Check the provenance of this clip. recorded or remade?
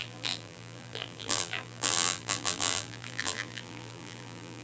remade